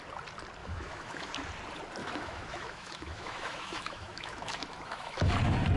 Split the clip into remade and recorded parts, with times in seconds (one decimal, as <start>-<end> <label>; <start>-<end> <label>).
0.0-0.6 recorded; 0.6-1.3 remade; 1.3-2.0 recorded; 2.0-5.3 remade; 5.3-5.8 recorded